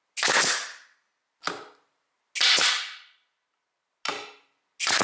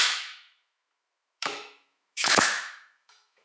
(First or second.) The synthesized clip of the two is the second